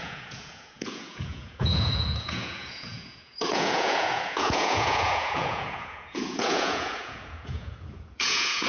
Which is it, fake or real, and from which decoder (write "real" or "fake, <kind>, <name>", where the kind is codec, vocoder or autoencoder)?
fake, vocoder, Vocos